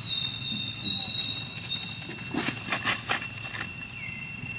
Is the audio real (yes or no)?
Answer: yes